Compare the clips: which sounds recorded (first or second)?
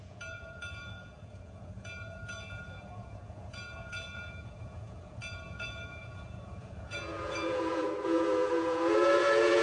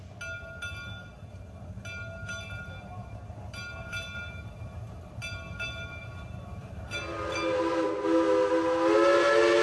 second